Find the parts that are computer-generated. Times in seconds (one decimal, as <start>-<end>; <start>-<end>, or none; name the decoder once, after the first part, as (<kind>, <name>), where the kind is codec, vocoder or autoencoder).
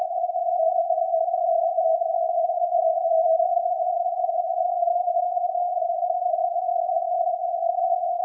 4.9-6.4 (vocoder, Vocos)